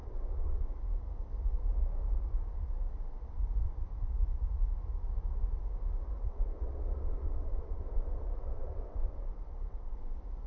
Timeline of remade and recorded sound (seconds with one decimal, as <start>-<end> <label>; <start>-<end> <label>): 0.0-0.6 remade; 0.6-6.2 recorded; 6.2-10.0 remade; 10.0-10.5 recorded